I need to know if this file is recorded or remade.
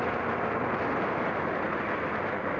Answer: recorded